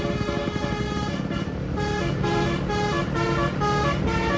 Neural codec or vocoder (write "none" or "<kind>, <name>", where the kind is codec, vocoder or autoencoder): none